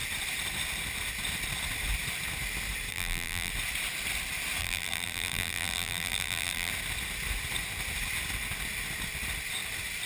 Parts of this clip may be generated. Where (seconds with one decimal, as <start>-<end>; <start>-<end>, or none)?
2.9-3.5; 4.6-6.7